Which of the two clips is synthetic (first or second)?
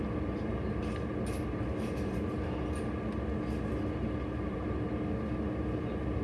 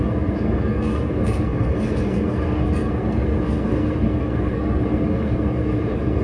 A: second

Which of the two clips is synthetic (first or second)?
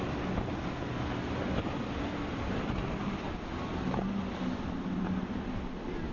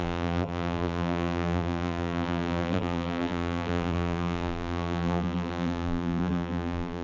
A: second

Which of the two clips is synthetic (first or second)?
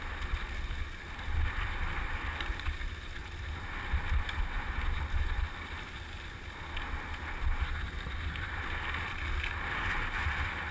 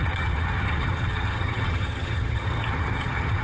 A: second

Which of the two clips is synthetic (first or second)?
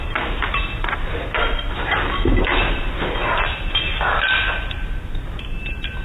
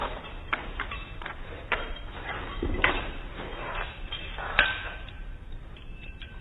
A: second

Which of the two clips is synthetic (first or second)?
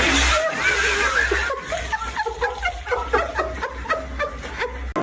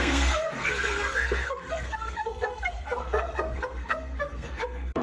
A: second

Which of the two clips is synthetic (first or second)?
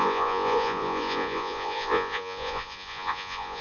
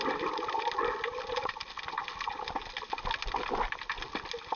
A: first